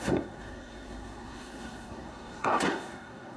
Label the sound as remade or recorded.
remade